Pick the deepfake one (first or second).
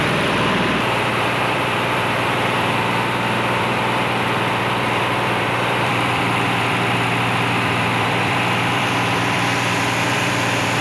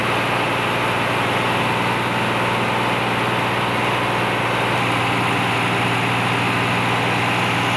first